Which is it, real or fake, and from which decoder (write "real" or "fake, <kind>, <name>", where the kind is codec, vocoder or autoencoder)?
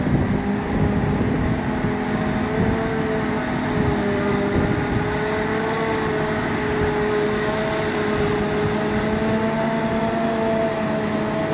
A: real